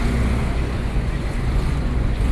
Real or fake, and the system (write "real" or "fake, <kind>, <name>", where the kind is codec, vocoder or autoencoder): fake, vocoder, Vocos